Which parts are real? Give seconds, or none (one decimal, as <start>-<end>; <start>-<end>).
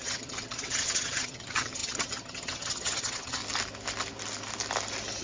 3.4-5.2